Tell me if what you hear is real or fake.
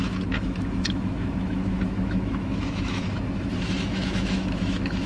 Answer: fake